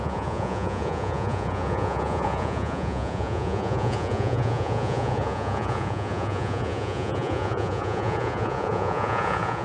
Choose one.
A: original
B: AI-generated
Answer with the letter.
B